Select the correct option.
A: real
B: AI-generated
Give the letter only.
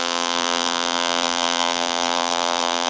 B